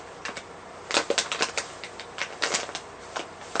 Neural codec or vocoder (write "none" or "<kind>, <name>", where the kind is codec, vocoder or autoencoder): none